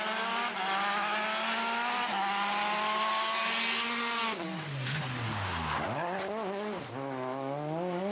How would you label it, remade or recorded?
recorded